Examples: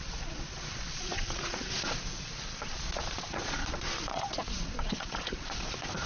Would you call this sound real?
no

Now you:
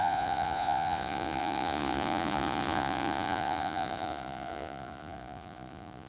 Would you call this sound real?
no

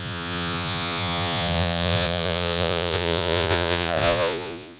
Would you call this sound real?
no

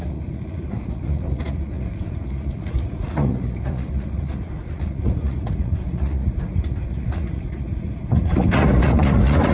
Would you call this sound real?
no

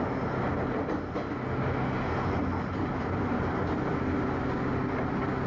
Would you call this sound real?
yes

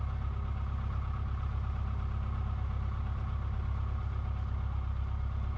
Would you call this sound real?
yes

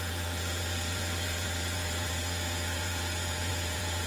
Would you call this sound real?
no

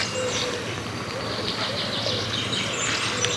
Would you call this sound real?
yes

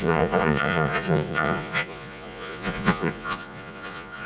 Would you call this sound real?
no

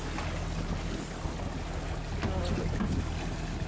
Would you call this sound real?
yes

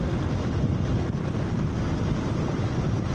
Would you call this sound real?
yes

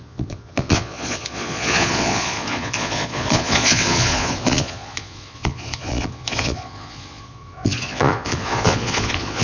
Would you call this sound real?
no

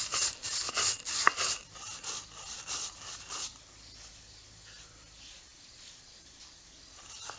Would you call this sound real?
yes